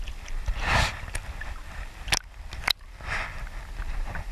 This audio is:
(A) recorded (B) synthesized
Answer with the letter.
A